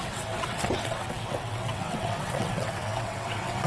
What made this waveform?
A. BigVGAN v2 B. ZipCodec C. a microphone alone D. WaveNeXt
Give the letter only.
D